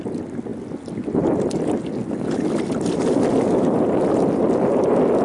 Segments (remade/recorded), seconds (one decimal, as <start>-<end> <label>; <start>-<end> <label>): 0.0-5.2 recorded